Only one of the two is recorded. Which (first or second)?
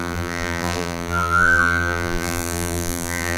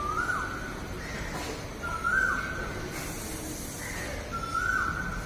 second